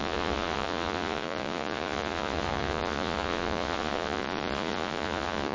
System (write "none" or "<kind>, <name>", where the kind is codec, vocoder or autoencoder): vocoder, Vocos